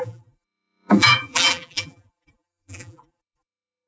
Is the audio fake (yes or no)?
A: yes